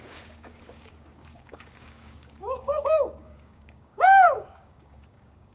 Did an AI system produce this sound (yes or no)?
yes